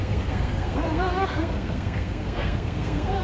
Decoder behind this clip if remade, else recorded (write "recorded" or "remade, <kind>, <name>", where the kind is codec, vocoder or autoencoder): remade, codec, SNAC